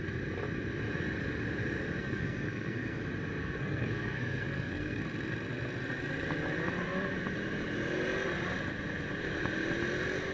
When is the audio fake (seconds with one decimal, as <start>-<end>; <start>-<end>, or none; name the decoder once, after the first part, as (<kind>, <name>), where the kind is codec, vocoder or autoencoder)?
2.0-3.0 (codec, SNAC); 3.4-5.0